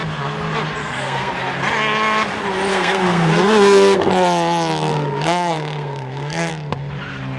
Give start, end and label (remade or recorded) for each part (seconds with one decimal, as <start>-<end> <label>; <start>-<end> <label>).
0.0-0.8 recorded; 0.8-1.3 remade; 1.3-2.7 recorded; 2.7-4.1 remade; 4.1-4.9 recorded; 4.9-6.5 remade; 6.5-7.4 recorded